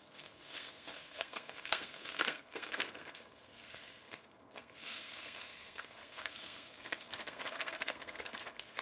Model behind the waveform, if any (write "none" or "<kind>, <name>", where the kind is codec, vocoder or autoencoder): codec, SNAC